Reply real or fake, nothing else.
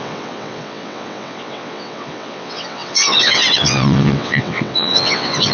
fake